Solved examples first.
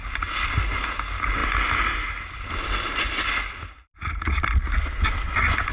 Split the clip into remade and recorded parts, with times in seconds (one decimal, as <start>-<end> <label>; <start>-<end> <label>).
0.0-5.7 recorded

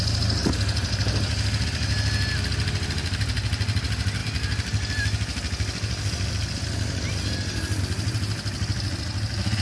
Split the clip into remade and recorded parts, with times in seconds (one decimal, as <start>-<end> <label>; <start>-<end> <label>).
0.0-9.6 recorded

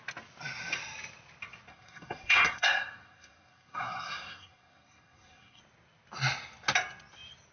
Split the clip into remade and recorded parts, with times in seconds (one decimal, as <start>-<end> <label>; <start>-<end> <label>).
0.0-1.7 recorded; 1.7-5.6 remade; 5.6-7.5 recorded

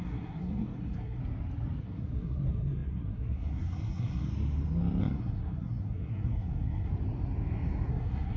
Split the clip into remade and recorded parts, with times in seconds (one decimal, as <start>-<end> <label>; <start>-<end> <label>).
0.0-1.2 remade; 1.2-1.8 recorded; 1.8-4.3 remade; 4.3-5.0 recorded; 5.0-6.9 remade; 6.9-7.9 recorded; 7.9-8.4 remade

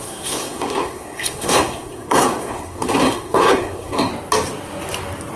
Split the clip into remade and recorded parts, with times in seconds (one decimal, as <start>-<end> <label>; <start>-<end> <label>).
0.0-4.1 remade; 4.1-5.4 recorded

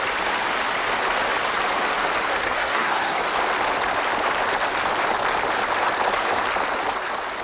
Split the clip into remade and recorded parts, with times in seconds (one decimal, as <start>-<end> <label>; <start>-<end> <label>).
0.0-2.3 recorded; 2.3-3.2 remade; 3.2-7.4 recorded

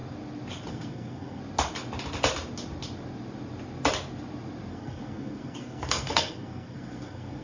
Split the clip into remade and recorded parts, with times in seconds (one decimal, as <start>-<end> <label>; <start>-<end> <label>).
0.0-0.7 recorded; 0.7-1.4 remade; 1.4-4.7 recorded; 4.7-7.4 remade